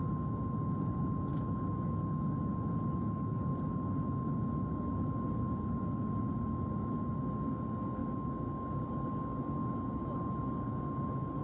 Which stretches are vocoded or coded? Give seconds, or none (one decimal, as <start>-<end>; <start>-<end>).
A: none